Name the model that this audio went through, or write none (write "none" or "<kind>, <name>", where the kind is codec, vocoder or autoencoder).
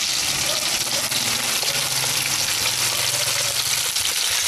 none